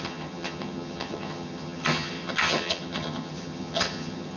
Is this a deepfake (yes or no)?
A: yes